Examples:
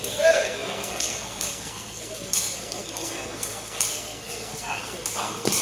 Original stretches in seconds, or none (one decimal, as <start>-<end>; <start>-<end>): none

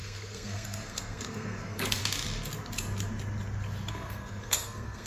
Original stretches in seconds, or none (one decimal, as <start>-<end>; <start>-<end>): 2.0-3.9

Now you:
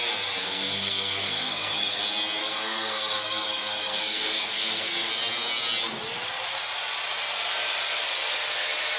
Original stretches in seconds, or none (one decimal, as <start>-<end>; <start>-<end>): 0.0-0.4; 2.0-2.4; 5.1-9.0

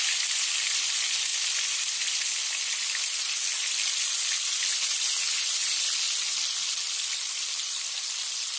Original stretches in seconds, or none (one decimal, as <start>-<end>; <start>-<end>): 0.0-8.6

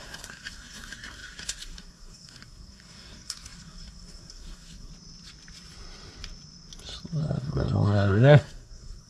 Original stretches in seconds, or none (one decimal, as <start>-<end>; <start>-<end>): 4.9-7.2